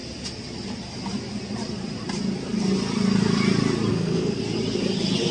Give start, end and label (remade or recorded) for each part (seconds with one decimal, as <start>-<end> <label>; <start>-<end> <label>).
0.0-3.9 recorded; 3.9-4.4 remade; 4.4-5.3 recorded